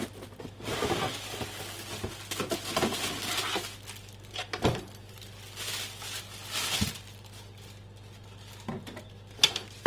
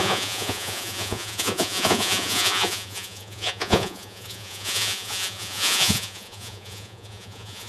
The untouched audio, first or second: first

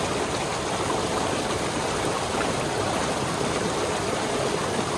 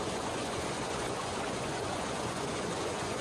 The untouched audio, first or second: first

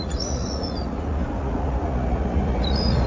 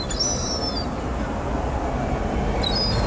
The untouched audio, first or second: second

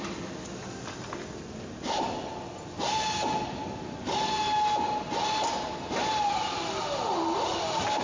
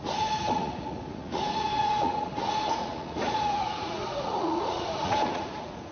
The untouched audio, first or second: first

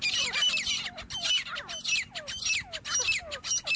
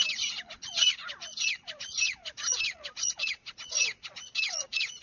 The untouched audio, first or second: first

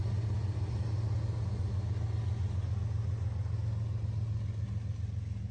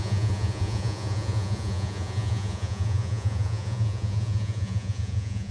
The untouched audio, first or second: first